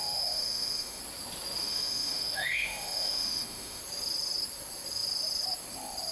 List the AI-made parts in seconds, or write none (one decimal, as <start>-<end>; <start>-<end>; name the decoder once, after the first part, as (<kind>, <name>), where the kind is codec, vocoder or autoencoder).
0.0-1.0 (autoencoder, DAC-VAE); 1.6-3.8